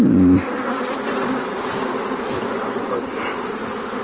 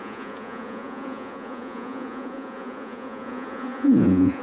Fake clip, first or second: second